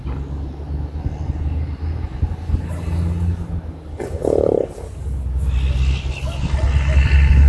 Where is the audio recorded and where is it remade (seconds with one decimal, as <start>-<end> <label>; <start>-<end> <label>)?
0.0-3.9 recorded; 3.9-4.7 remade; 4.7-7.5 recorded